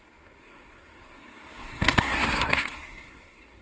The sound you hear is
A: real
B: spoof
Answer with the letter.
B